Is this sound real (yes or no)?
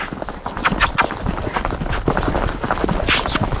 yes